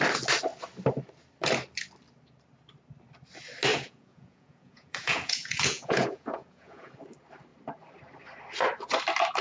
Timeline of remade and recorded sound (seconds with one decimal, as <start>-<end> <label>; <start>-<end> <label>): 0.0-3.7 recorded; 3.7-6.9 remade; 6.9-9.4 recorded